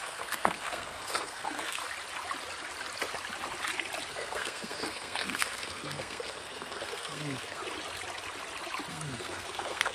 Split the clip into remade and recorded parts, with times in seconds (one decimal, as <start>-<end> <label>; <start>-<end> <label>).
0.0-1.8 remade; 1.8-4.1 recorded; 4.1-7.6 remade; 7.6-8.9 recorded; 8.9-9.9 remade